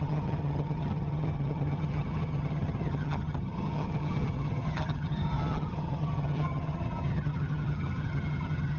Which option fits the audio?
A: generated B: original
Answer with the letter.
A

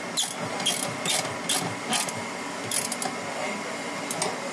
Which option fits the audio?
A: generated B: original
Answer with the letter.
B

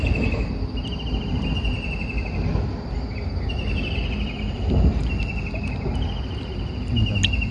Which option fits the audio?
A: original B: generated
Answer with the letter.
A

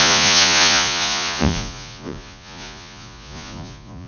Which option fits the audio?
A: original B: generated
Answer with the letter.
B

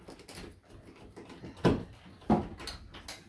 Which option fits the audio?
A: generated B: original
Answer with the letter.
B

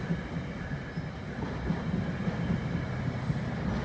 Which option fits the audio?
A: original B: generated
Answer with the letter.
A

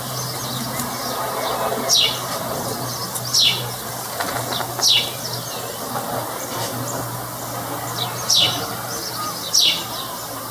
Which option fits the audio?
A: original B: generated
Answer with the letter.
A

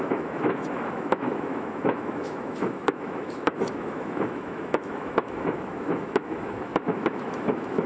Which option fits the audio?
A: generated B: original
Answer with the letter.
A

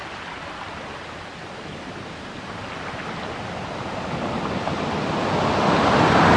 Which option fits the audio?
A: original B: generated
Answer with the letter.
A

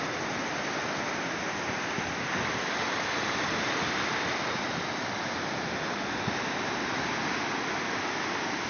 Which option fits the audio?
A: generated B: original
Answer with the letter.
B